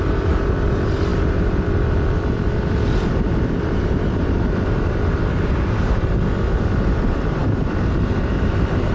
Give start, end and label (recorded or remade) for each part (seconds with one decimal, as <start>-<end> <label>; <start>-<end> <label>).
0.0-8.9 remade